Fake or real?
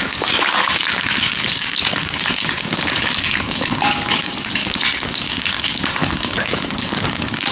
fake